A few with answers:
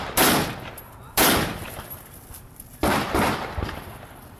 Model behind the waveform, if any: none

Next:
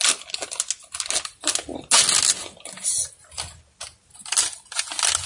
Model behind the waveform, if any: none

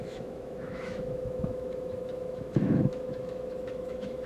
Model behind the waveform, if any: autoencoder, DAC-VAE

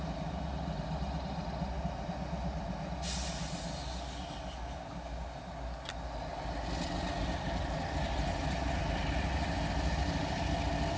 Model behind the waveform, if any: none